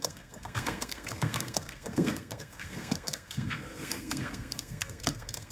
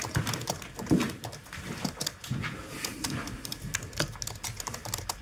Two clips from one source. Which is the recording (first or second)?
second